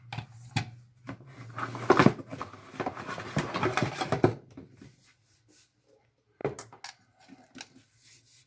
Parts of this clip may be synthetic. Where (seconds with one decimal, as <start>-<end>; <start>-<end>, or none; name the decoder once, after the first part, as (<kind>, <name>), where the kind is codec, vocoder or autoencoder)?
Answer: none